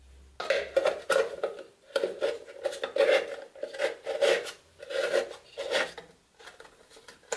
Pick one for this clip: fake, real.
real